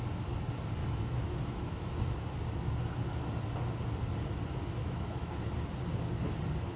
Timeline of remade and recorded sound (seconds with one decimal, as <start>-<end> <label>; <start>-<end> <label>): 0.0-0.8 recorded; 0.8-1.9 remade; 1.9-4.8 recorded; 4.8-5.5 remade; 5.5-6.8 recorded